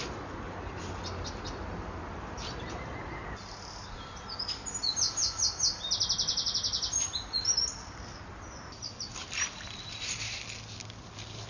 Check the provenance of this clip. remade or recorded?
recorded